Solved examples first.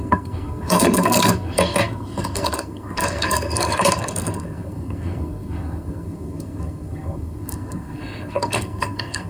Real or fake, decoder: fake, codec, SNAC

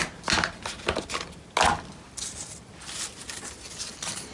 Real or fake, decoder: real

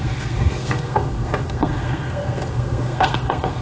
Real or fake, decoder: fake, codec, SNAC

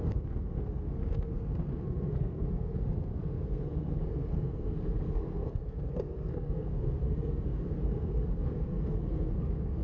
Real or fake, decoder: fake, codec, SNAC